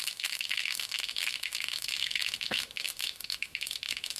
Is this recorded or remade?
remade